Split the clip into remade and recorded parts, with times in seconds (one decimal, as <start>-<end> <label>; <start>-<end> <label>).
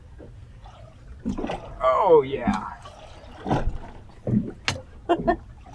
0.0-5.7 recorded